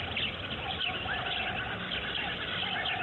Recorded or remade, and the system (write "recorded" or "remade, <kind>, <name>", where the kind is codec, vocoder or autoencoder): recorded